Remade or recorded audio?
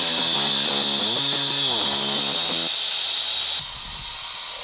recorded